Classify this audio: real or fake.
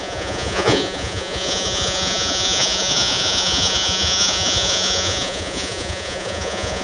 fake